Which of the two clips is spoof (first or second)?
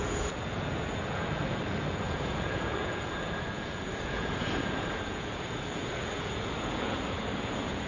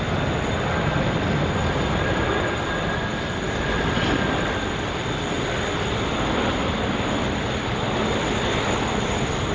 first